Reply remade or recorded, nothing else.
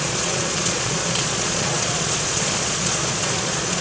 remade